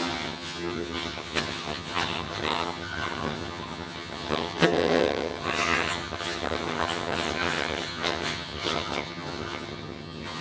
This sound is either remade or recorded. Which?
remade